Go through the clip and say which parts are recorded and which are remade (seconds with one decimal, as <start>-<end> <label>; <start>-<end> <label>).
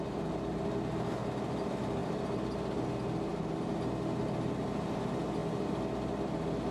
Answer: 0.0-6.7 recorded